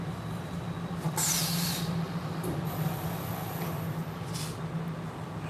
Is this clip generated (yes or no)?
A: no